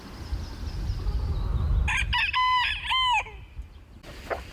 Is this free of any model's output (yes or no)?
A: yes